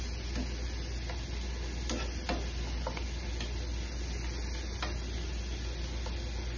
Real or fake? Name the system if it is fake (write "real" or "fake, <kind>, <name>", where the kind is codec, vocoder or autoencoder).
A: real